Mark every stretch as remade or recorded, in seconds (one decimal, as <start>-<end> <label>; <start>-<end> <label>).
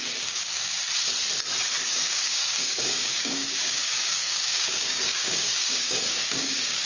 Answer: 0.0-0.8 remade; 0.8-1.9 recorded; 1.9-6.9 remade